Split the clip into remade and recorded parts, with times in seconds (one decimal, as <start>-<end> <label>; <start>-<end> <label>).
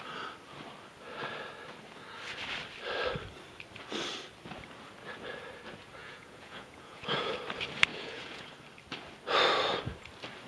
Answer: 0.0-6.0 recorded; 6.0-7.3 remade; 7.3-7.9 recorded; 7.9-8.5 remade; 8.5-10.5 recorded